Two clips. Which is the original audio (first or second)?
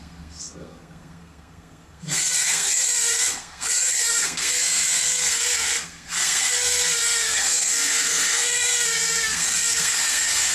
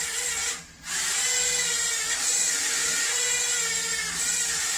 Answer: second